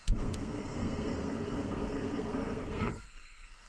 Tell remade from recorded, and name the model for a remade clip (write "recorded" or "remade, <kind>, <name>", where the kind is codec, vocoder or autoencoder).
remade, codec, SNAC